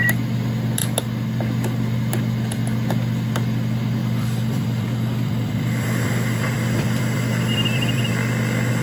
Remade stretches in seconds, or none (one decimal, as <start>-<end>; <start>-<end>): 4.0-8.1

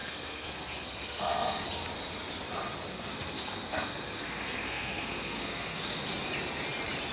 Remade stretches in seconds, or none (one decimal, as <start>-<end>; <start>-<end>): 0.0-1.7; 2.9-6.0

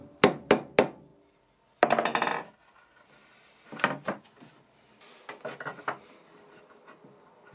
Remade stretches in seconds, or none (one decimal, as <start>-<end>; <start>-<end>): none

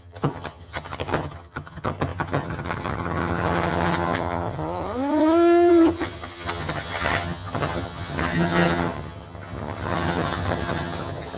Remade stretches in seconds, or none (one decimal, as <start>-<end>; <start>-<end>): 0.0-11.4

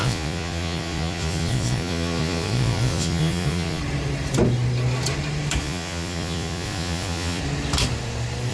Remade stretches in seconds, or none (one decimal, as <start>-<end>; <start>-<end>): 0.0-3.8; 5.6-7.4